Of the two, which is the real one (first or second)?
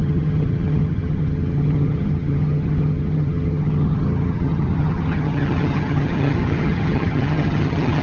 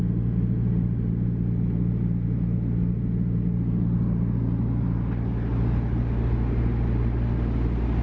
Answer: second